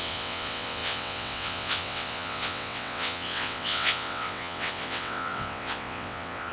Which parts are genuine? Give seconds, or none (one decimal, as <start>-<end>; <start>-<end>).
none